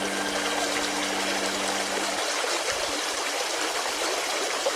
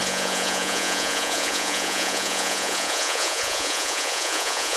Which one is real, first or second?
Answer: first